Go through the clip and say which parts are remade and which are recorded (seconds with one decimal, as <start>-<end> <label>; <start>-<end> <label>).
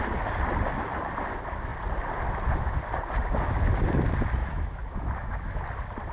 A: 0.0-4.4 recorded; 4.4-5.6 remade; 5.6-6.1 recorded